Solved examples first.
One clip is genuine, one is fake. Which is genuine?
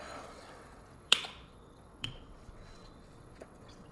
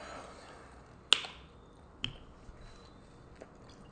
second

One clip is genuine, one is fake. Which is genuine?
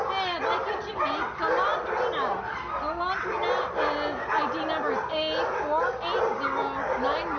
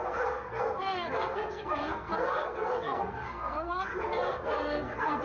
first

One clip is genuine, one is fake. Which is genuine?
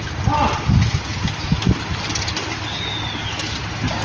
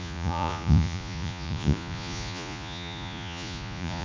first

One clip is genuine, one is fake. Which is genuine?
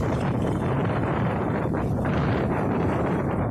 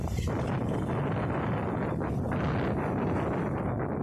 second